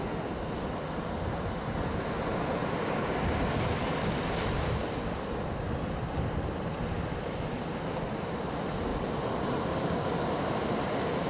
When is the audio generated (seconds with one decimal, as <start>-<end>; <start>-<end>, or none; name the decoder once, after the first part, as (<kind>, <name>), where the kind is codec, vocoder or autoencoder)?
8.9-10.5 (vocoder, BigVGAN v2)